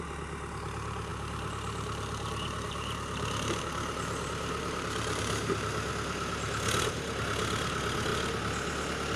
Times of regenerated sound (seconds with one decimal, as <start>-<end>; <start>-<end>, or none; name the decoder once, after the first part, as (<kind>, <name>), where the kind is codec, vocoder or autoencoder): 1.1-5.9 (vocoder, BigVGAN v2)